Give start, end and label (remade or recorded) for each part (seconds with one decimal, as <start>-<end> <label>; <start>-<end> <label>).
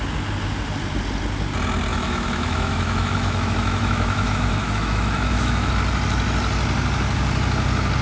0.0-1.9 recorded; 1.9-5.7 remade; 5.7-8.0 recorded